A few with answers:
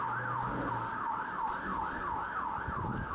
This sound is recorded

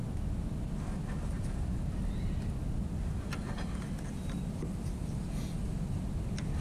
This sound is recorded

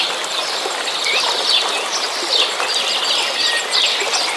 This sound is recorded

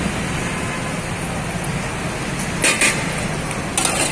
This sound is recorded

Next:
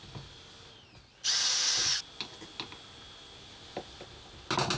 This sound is recorded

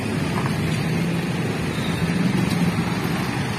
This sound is recorded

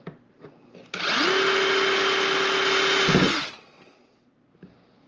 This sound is recorded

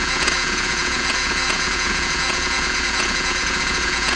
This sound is remade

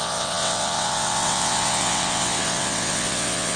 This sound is remade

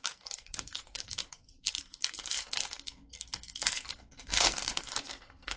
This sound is remade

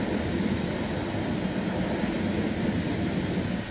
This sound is recorded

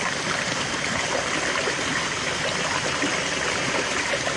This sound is recorded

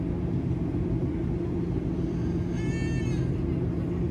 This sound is recorded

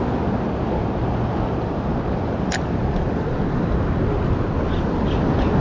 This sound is recorded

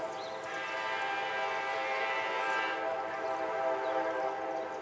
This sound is recorded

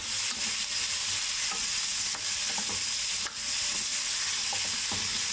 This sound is recorded